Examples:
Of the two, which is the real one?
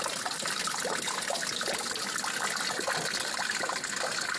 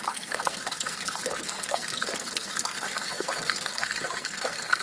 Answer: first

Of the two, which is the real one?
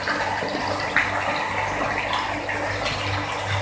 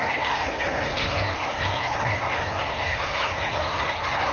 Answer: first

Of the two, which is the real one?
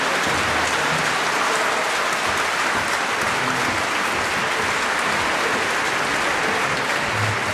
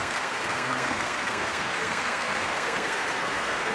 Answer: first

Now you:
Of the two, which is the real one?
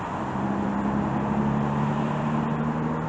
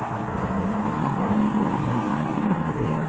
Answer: first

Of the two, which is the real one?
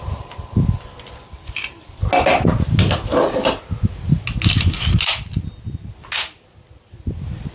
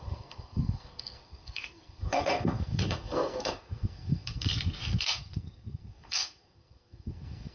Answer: first